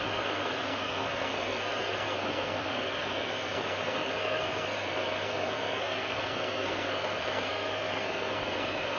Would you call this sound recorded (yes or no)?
no